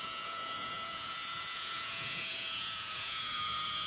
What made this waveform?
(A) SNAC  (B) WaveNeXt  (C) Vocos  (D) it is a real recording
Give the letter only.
C